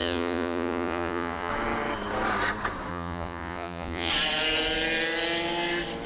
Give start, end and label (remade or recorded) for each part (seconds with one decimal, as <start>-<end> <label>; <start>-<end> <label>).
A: 0.0-1.5 remade; 1.5-2.9 recorded; 2.9-4.1 remade; 4.1-6.1 recorded